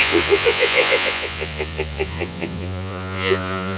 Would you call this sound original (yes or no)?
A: no